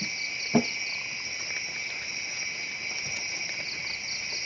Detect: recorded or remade recorded